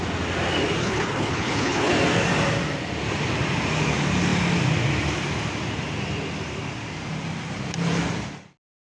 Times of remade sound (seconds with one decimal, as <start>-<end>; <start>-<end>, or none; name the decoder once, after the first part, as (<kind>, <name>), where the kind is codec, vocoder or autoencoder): 0.8-1.9 (codec, HILCodec)